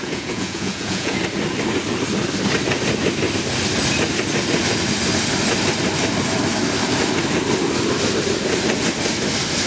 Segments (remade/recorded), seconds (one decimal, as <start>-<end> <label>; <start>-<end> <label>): 0.0-1.2 remade; 1.2-9.7 recorded